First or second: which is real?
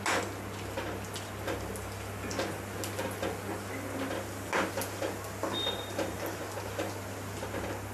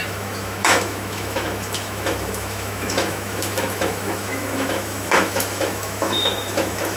first